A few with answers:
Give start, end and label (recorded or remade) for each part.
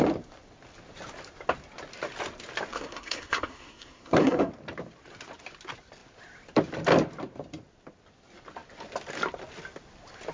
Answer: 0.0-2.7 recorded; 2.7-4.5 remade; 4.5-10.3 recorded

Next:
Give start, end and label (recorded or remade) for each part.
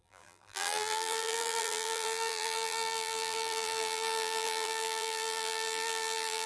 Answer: 0.0-6.5 remade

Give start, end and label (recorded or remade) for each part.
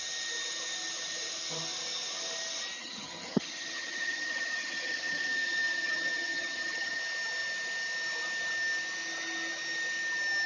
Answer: 0.0-2.8 recorded; 2.8-7.0 remade; 7.0-10.5 recorded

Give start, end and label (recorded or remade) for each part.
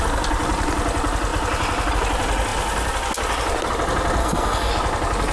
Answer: 0.0-4.2 recorded; 4.2-4.7 remade; 4.7-5.3 recorded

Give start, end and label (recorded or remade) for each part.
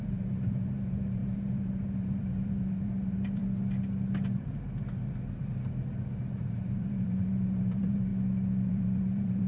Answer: 0.0-3.4 remade; 3.4-6.4 recorded; 6.4-8.1 remade; 8.1-8.7 recorded; 8.7-9.5 remade